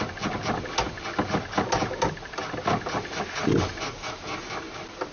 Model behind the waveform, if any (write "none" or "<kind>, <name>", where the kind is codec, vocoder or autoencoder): none